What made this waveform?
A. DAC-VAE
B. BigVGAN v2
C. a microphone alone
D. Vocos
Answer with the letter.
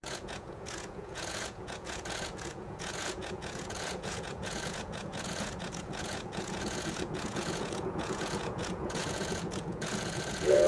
D